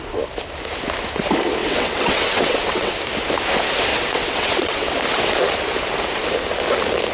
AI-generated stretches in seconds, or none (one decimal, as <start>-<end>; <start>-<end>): 1.6-2.9; 3.9-4.9